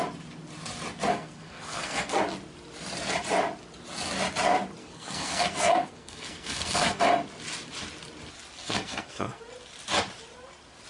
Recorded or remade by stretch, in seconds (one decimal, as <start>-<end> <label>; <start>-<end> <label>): 0.0-1.1 recorded; 1.1-2.2 remade; 2.2-4.8 recorded; 4.8-7.0 remade; 7.0-8.6 recorded; 8.6-9.4 remade; 9.4-10.9 recorded